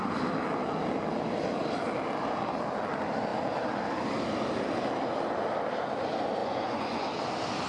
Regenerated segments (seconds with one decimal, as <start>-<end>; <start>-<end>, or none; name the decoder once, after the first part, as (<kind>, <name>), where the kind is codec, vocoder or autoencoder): 6.4-7.2 (vocoder, Vocos)